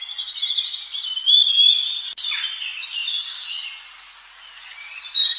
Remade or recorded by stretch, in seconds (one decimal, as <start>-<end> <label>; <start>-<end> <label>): 0.0-5.4 recorded